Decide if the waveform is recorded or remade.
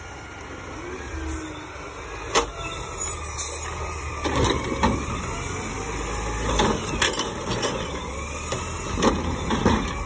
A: recorded